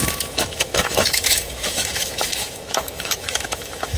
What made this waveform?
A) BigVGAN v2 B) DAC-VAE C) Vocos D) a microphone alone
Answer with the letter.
B